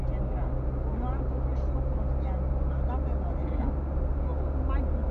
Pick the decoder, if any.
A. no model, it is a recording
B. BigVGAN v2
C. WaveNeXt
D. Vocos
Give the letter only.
A